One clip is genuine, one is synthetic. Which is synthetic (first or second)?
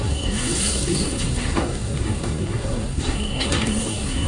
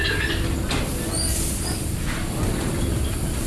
first